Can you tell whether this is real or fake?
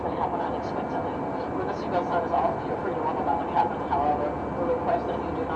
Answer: real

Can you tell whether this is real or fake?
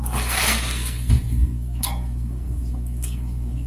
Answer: fake